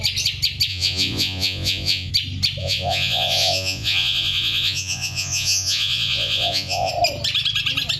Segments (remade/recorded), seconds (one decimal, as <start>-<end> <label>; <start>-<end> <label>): 0.0-0.7 recorded; 0.7-2.1 remade; 2.1-2.6 recorded; 2.6-6.9 remade; 6.9-8.0 recorded